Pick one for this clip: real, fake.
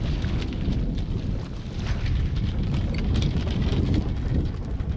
real